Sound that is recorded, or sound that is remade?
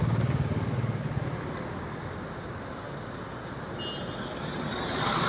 recorded